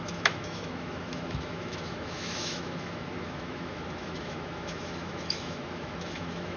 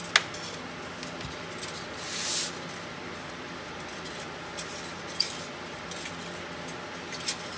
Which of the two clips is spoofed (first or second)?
first